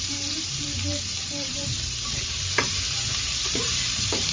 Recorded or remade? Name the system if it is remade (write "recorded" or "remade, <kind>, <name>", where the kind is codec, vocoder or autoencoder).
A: remade, vocoder, BigVGAN v2